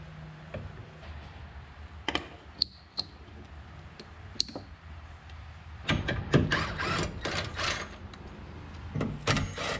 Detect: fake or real real